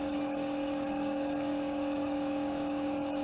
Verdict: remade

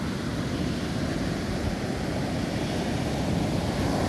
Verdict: recorded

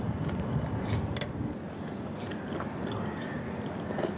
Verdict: recorded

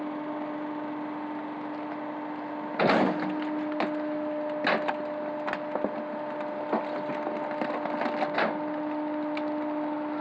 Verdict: recorded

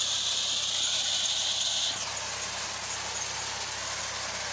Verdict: recorded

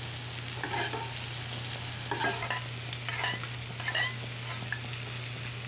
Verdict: recorded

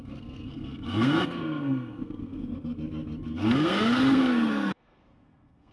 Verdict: remade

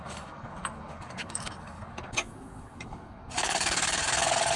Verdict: remade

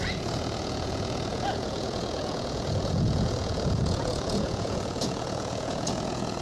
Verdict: remade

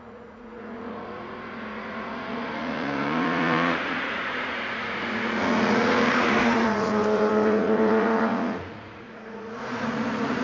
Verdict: remade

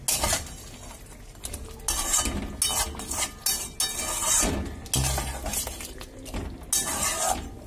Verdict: recorded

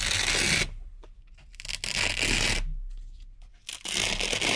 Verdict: recorded